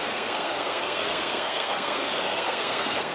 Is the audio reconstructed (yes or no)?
yes